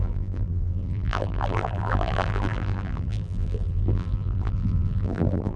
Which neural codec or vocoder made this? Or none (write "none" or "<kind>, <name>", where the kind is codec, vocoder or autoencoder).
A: vocoder, BigVGAN v2